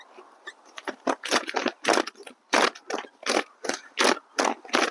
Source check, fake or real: real